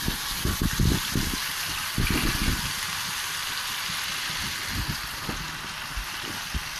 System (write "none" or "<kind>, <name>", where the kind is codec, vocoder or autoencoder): none